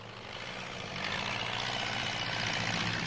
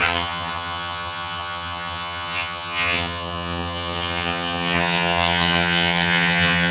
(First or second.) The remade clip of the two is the second